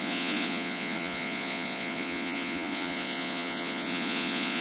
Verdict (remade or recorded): remade